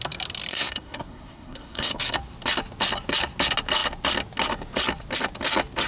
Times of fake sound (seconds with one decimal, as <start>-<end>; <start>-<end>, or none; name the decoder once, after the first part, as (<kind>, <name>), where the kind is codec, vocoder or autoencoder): 0.5-1.9 (codec, SNAC)